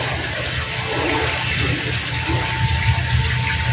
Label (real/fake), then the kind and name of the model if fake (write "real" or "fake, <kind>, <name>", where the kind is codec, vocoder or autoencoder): real